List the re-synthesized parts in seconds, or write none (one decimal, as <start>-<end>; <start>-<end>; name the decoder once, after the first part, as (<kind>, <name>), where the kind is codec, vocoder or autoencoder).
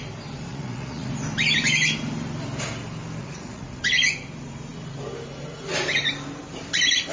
0.5-1.1 (vocoder, Vocos); 3.2-3.9